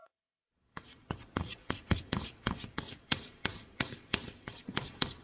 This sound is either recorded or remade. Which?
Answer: remade